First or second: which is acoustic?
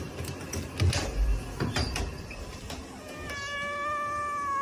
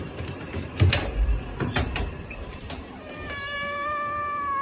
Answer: first